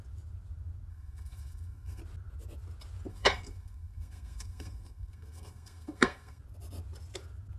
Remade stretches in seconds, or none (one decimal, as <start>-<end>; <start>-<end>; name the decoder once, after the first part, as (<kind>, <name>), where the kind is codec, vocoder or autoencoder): 0.9-2.0 (codec, SNAC); 3.1-6.4